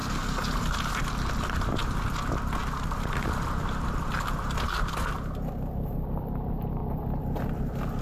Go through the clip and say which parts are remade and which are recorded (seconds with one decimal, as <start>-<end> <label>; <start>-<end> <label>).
0.0-8.0 recorded